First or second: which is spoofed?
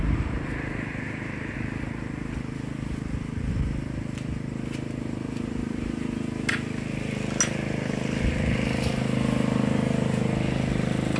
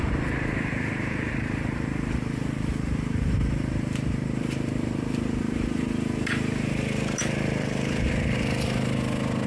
second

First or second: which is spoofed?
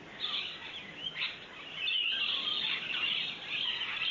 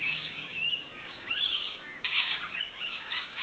second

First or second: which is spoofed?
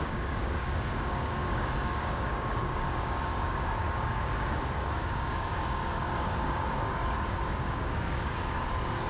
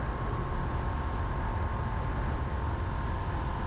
first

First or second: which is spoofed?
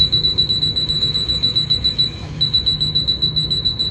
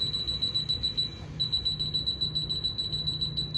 first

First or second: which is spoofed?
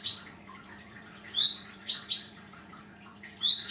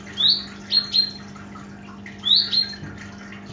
first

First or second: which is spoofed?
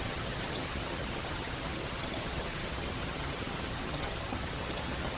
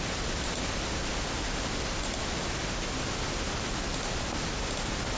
first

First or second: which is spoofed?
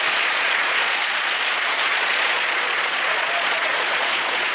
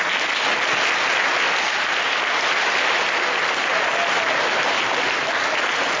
first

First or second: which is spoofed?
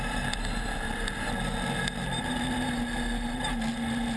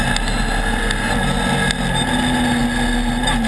first